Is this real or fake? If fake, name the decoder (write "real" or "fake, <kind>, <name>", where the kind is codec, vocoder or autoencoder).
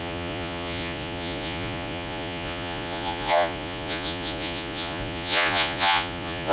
fake, vocoder, Vocos